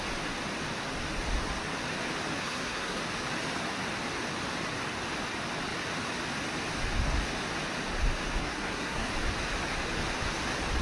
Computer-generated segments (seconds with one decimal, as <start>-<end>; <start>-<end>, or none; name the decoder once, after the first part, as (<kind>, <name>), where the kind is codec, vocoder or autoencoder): 2.4-3.0 (codec, SNAC); 8.4-9.1